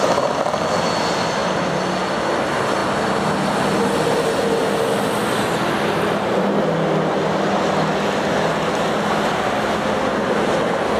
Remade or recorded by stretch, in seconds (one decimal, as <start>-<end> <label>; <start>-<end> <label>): 0.0-11.0 recorded